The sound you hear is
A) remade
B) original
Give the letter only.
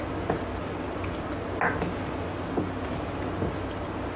B